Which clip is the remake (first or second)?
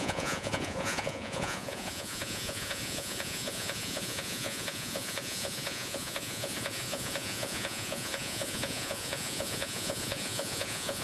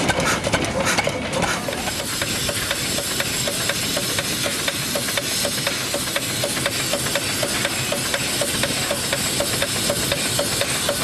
first